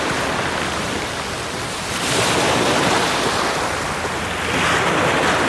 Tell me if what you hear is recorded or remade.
recorded